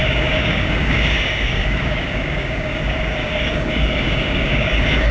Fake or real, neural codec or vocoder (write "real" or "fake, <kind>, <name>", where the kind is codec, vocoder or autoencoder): fake, codec, DAC